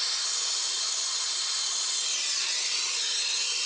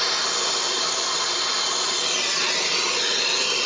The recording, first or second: first